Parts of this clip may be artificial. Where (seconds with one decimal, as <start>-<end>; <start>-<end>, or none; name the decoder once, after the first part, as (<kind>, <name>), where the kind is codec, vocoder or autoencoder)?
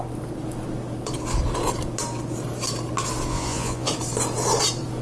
3.3-3.9 (vocoder, Vocos)